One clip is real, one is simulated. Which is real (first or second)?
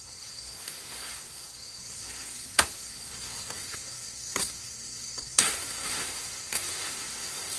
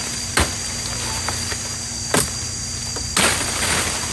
second